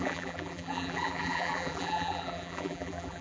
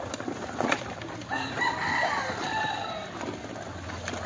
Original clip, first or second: second